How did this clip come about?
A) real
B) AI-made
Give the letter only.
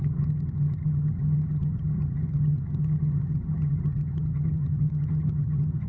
B